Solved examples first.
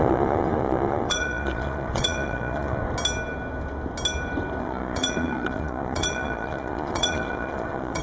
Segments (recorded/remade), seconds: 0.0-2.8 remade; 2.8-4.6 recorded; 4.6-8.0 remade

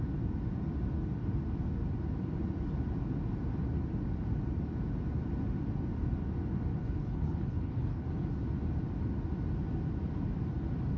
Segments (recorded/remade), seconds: 0.0-6.7 recorded; 6.7-8.1 remade; 8.1-11.0 recorded

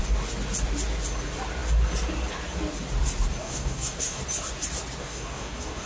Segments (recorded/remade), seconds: 0.0-3.4 recorded; 3.4-4.2 remade; 4.2-5.0 recorded; 5.0-5.9 remade

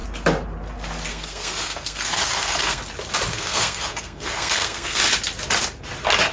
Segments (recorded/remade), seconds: 0.0-1.1 recorded; 1.1-2.8 remade; 2.8-3.3 recorded; 3.3-5.0 remade; 5.0-6.3 recorded